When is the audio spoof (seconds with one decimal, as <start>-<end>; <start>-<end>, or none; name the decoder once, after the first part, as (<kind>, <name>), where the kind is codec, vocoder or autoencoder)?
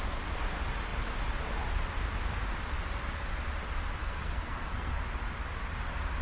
4.0-5.0 (codec, SNAC)